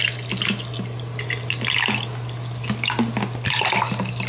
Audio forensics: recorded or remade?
recorded